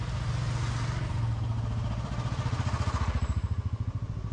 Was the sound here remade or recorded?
recorded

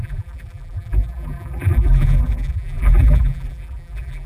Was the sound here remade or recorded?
remade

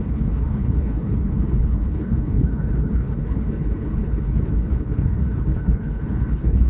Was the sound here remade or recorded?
remade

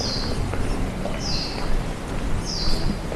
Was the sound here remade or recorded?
recorded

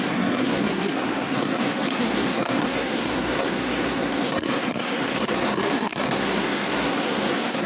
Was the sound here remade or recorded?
remade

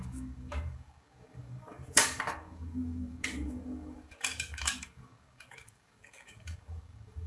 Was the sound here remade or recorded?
remade